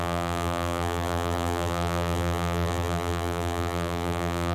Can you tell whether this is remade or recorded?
remade